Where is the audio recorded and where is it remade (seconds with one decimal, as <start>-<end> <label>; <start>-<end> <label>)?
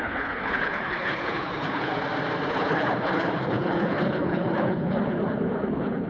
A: 0.0-1.9 remade; 1.9-2.5 recorded; 2.5-6.1 remade